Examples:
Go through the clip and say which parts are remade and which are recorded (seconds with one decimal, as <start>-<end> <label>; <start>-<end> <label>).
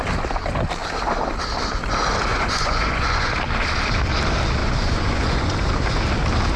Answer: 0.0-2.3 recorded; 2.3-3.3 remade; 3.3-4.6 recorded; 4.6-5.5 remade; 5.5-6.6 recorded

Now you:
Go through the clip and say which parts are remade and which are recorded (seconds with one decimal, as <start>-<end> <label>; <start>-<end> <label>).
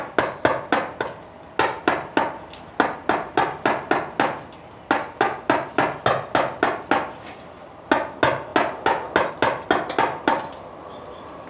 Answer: 0.0-11.5 recorded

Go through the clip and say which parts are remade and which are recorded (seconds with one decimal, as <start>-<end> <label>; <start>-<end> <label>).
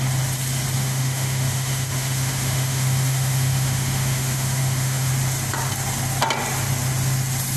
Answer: 0.0-0.8 recorded; 0.8-5.1 remade; 5.1-7.6 recorded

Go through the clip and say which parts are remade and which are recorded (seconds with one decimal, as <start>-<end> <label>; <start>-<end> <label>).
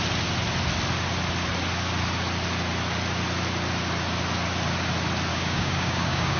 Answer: 0.0-5.3 recorded; 5.3-6.4 remade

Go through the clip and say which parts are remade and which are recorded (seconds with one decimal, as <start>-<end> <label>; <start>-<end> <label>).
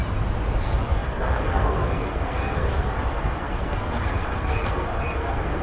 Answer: 0.0-0.6 recorded; 0.6-5.6 remade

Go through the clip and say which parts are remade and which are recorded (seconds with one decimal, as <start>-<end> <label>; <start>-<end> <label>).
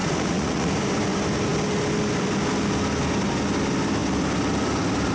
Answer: 0.0-0.7 remade; 0.7-5.1 recorded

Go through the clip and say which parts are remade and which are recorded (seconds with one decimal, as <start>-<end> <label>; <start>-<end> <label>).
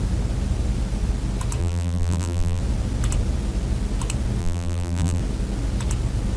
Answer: 0.0-1.6 recorded; 1.6-2.6 remade; 2.6-4.4 recorded; 4.4-5.2 remade; 5.2-6.4 recorded